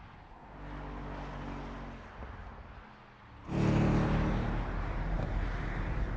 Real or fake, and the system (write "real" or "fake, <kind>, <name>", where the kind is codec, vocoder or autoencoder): real